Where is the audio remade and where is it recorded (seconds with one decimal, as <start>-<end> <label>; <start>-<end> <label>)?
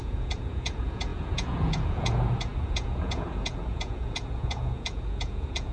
0.0-5.7 remade